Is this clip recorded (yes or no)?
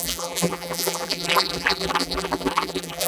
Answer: no